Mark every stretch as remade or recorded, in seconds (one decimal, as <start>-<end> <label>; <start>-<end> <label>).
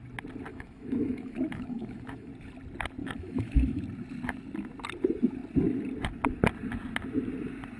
0.0-0.5 recorded; 0.5-2.3 remade; 2.3-3.0 recorded; 3.0-3.8 remade; 3.8-7.8 recorded